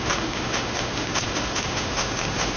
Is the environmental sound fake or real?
fake